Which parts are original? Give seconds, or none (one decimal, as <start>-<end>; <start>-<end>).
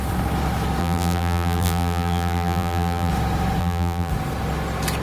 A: 0.0-0.8; 3.1-3.6; 4.1-5.0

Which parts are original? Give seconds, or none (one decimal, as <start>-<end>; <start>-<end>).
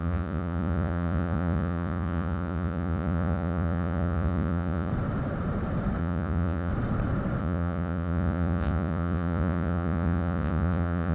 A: 4.9-6.0; 6.7-7.4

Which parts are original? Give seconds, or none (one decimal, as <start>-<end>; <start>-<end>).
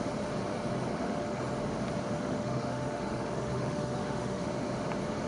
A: 0.0-0.9; 1.4-2.1; 4.5-5.3